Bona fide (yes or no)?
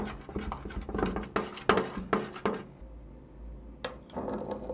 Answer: yes